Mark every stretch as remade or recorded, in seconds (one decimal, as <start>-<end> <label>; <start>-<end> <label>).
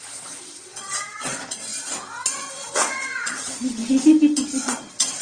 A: 0.0-1.7 remade; 1.7-2.5 recorded; 2.5-3.8 remade; 3.8-4.6 recorded; 4.6-5.2 remade